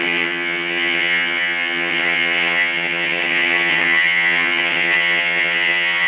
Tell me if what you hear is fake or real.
fake